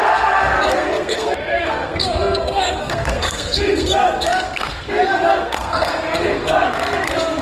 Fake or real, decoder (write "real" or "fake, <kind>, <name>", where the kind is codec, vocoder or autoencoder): fake, codec, SNAC